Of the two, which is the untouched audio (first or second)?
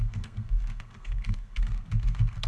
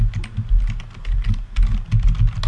second